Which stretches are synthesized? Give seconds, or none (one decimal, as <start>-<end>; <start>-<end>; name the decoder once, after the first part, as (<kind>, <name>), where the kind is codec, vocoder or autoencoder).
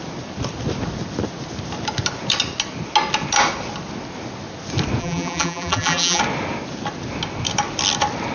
5.0-6.2 (vocoder, BigVGAN v2)